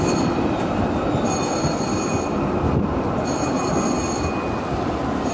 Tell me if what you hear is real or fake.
real